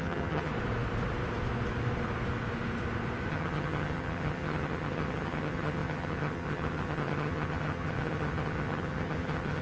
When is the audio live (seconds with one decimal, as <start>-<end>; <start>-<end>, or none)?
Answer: 0.5-3.3